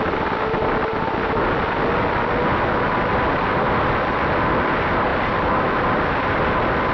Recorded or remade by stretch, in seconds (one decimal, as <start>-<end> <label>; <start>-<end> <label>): 0.0-6.9 recorded